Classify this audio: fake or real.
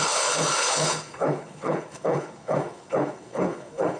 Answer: fake